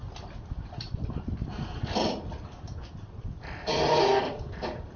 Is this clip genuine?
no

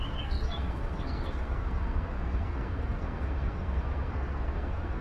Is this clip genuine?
no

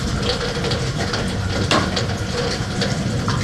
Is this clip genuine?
no